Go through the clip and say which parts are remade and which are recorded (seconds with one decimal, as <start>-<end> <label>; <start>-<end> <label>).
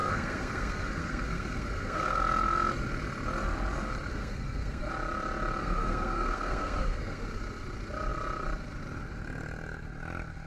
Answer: 0.0-2.2 remade; 2.2-4.2 recorded; 4.2-4.9 remade; 4.9-5.6 recorded; 5.6-7.2 remade; 7.2-10.5 recorded